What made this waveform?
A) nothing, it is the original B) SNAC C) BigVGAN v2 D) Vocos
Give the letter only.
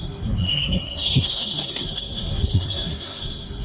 B